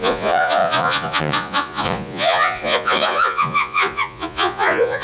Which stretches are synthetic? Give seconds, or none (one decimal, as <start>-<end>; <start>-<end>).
0.0-5.0